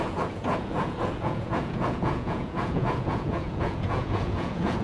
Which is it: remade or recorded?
remade